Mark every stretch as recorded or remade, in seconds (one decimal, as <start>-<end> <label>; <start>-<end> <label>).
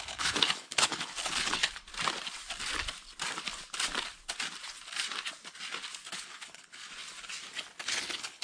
0.0-1.9 remade; 1.9-6.1 recorded; 6.1-6.9 remade; 6.9-7.8 recorded; 7.8-8.4 remade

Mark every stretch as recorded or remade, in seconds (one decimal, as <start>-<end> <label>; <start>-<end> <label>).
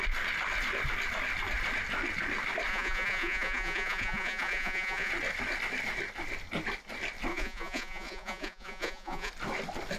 0.0-2.7 recorded; 2.7-5.1 remade; 5.1-7.3 recorded; 7.3-9.3 remade; 9.3-10.0 recorded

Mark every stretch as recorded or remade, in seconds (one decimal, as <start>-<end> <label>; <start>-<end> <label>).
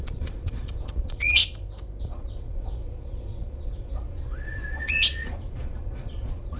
0.0-1.4 remade; 1.4-2.0 recorded; 2.0-6.6 remade